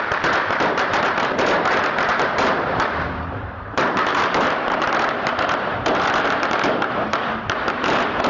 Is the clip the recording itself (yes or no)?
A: no